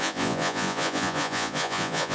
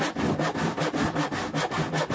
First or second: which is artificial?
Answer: first